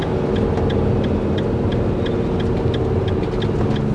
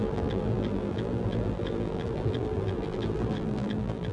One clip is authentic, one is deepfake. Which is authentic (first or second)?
first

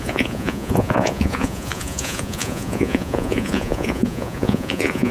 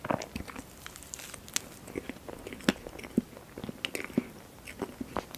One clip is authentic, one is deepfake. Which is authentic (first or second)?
second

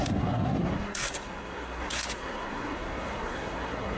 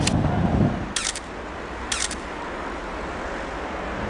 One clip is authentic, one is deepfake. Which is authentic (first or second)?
second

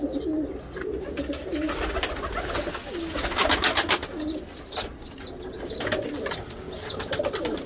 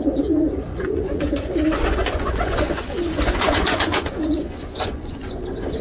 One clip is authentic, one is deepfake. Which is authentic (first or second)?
first